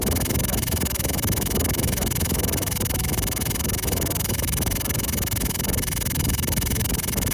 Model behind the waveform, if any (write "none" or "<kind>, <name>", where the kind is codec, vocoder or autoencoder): autoencoder, DAC-VAE